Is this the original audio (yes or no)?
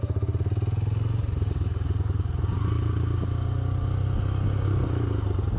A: yes